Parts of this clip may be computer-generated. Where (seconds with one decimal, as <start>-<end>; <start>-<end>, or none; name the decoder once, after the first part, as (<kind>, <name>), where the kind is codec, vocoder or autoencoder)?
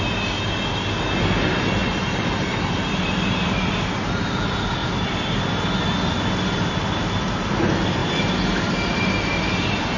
1.8-3.7 (vocoder, BigVGAN v2); 8.0-9.1